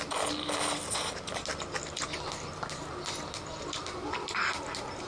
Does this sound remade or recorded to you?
recorded